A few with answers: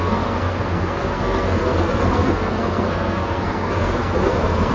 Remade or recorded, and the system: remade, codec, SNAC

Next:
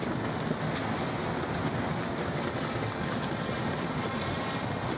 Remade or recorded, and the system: recorded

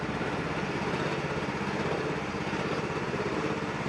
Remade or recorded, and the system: remade, vocoder, BigVGAN v2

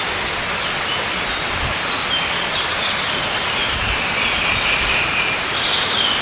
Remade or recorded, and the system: recorded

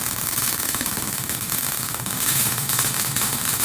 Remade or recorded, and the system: remade, autoencoder, DAC-VAE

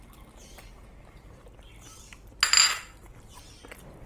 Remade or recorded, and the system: recorded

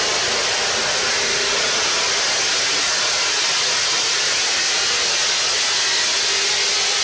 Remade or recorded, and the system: recorded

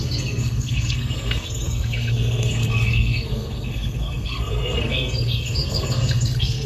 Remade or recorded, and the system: remade, codec, SNAC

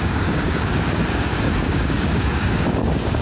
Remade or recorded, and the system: remade, codec, DAC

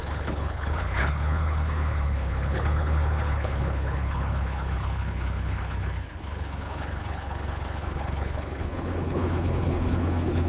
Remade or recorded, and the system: remade, codec, HILCodec